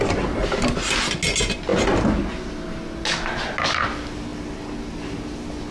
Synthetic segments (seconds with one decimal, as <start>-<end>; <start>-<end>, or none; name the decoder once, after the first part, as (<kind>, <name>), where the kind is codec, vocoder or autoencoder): none